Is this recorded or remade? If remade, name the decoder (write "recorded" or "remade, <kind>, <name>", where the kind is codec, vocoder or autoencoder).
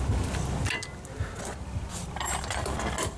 recorded